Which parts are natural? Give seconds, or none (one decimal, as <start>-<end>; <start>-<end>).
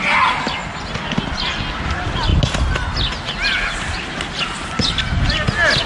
0.0-5.9